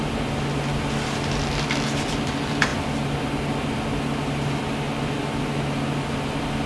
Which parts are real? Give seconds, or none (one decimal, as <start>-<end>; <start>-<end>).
0.0-6.7